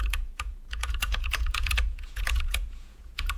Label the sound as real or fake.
fake